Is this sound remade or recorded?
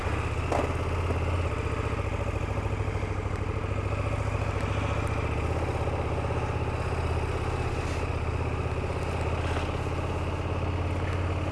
recorded